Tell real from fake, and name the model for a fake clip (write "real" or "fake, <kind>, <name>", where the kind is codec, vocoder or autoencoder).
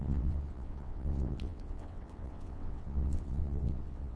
fake, vocoder, WaveNeXt